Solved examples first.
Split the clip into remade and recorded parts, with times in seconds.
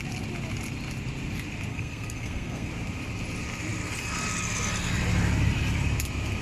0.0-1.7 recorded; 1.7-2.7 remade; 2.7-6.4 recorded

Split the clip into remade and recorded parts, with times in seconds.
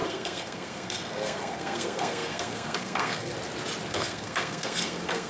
0.0-3.3 remade; 3.3-3.9 recorded; 3.9-5.3 remade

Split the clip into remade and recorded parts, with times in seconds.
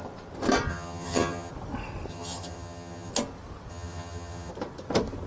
0.0-0.7 recorded; 0.7-1.5 remade; 1.5-2.1 recorded; 2.1-3.1 remade; 3.1-3.7 recorded; 3.7-4.5 remade; 4.5-5.3 recorded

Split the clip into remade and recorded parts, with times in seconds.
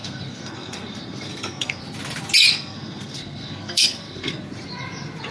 0.0-1.8 remade; 1.8-2.5 recorded; 2.5-4.4 remade; 4.4-5.3 recorded